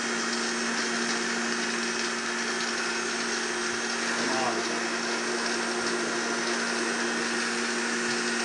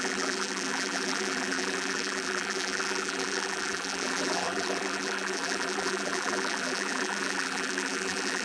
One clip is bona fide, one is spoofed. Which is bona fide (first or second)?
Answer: first